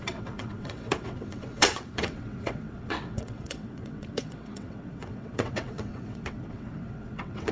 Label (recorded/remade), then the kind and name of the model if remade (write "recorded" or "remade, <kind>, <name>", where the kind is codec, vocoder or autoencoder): remade, vocoder, WaveNeXt